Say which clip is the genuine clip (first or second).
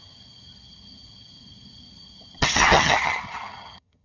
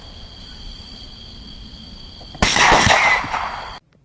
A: second